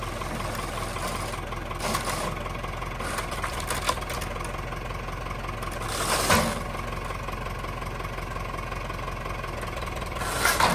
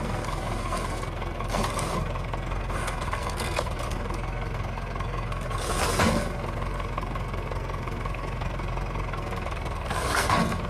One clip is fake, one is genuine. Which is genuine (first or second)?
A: first